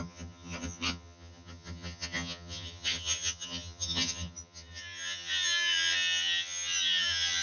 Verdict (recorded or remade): remade